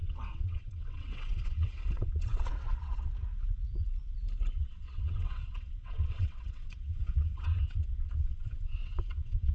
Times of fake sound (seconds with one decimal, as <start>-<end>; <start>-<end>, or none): 0.0-3.1; 4.6-9.5